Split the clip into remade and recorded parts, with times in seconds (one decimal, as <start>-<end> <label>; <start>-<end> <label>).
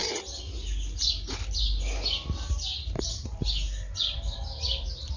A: 0.0-3.0 recorded; 3.0-5.2 remade